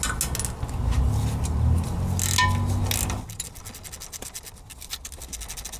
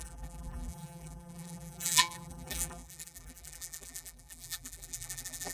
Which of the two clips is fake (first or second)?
second